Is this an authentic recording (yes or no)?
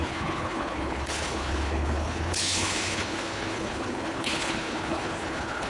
no